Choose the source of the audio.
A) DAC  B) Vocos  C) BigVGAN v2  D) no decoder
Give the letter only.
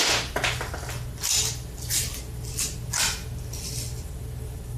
D